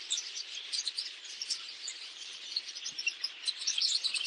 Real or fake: real